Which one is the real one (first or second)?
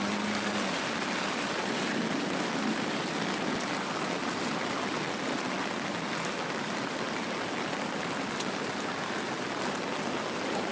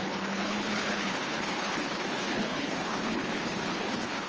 first